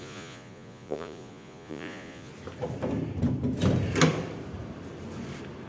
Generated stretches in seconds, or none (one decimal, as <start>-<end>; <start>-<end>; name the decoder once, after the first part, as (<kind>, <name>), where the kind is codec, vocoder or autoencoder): 0.0-2.3 (vocoder, Vocos)